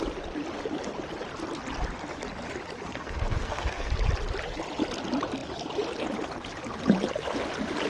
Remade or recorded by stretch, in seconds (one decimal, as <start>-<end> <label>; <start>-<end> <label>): 0.0-2.9 recorded; 2.9-3.9 remade; 3.9-7.9 recorded